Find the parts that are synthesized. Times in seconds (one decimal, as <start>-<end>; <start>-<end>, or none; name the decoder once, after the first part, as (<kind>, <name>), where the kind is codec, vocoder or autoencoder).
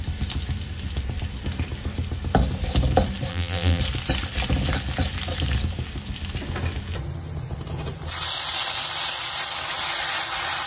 3.3-3.8 (vocoder, BigVGAN v2)